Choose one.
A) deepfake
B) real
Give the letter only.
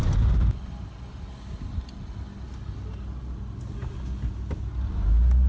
B